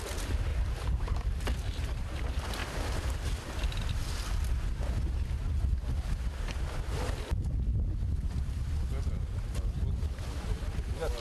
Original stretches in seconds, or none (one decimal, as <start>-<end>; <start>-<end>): 0.0-0.5; 2.2-11.2